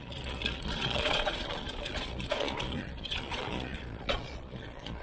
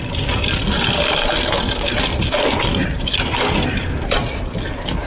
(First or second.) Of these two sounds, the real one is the second